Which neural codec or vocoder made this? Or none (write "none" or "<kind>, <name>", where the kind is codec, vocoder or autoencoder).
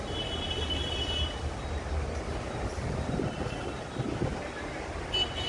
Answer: none